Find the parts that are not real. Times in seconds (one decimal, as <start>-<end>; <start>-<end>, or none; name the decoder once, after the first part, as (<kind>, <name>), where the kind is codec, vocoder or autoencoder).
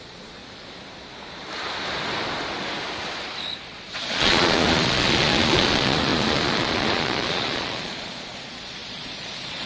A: 0.0-0.4 (vocoder, Vocos); 3.6-9.7